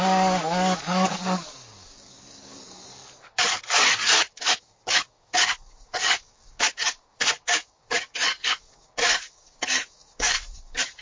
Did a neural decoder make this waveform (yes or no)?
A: yes